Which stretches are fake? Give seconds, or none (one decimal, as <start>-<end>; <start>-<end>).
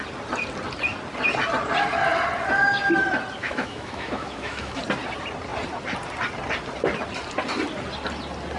3.4-4.8